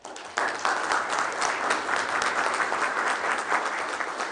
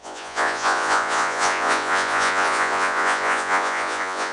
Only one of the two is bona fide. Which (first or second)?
first